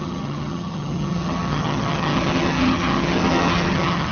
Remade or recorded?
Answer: remade